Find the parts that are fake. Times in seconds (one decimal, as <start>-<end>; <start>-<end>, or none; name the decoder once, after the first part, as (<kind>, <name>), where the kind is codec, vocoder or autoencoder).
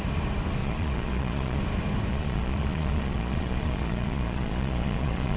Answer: 0.6-1.6 (vocoder, Vocos); 2.1-5.4